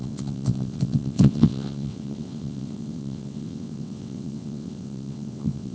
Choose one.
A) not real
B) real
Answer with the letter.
A